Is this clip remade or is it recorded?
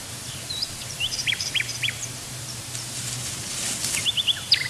remade